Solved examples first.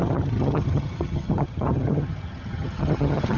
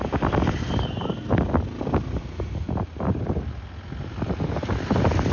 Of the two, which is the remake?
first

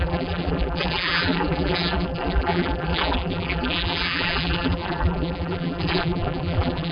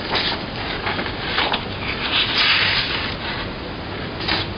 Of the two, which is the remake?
first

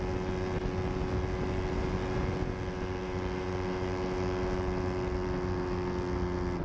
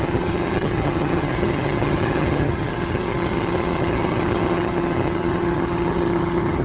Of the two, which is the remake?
second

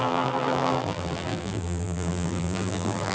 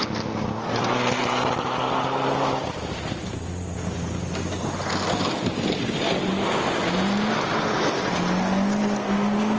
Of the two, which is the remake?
first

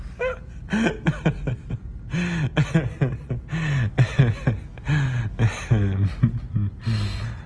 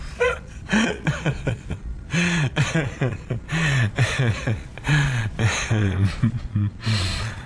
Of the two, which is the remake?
second